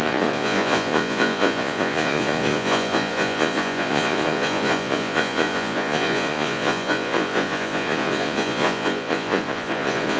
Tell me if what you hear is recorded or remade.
remade